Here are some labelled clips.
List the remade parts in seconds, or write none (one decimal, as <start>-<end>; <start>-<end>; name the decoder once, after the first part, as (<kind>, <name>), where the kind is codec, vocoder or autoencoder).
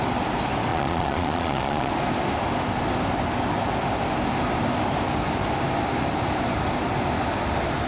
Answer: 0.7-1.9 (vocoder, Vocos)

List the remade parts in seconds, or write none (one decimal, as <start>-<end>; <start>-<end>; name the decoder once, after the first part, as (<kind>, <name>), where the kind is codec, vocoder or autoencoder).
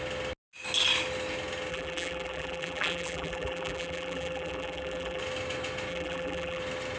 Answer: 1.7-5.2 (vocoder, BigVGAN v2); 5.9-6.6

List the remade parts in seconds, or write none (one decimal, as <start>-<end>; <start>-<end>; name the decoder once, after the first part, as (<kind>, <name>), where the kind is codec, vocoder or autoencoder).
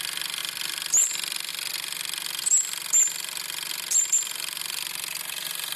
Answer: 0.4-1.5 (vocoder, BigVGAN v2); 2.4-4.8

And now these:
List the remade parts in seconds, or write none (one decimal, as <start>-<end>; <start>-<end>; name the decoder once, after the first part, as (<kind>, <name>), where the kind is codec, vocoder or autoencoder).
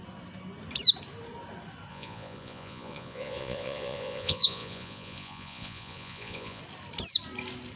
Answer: 1.9-6.6 (vocoder, Vocos)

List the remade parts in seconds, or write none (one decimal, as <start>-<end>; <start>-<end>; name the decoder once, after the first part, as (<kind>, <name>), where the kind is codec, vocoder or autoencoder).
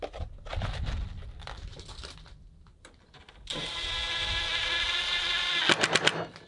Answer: 0.5-3.7 (vocoder, BigVGAN v2)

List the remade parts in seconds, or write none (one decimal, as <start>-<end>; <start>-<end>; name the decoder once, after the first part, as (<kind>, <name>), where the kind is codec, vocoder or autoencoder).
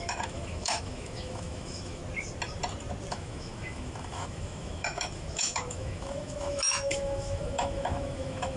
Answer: 0.0-2.0 (autoencoder, DAC-VAE); 3.1-8.6